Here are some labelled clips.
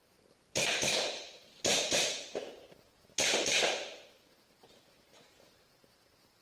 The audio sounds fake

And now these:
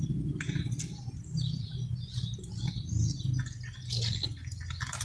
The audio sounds real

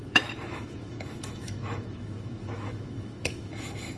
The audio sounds fake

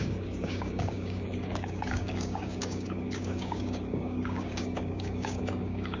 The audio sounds fake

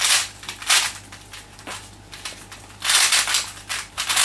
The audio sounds real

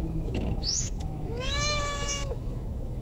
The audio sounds fake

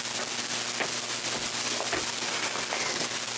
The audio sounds real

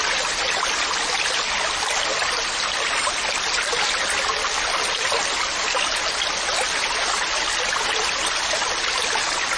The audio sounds real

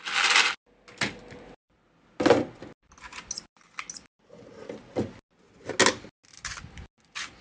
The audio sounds real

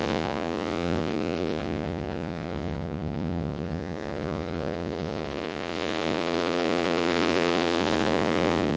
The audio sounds fake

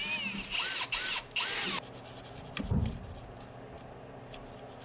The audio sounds real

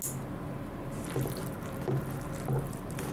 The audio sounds real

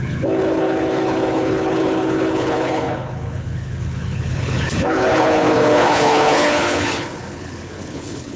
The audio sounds fake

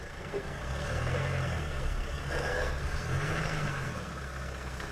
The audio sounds fake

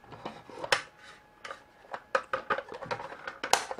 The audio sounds real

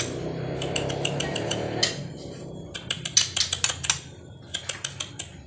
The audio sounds real